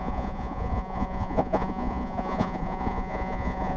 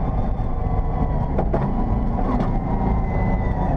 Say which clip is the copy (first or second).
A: first